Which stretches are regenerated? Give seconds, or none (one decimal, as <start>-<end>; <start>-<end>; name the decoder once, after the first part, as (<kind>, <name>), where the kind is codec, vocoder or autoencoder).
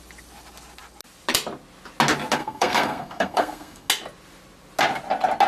2.4-3.9 (codec, SNAC)